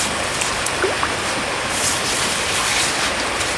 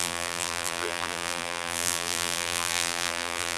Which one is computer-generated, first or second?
second